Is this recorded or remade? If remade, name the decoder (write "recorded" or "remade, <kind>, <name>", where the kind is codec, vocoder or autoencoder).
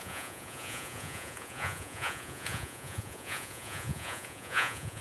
remade, vocoder, Vocos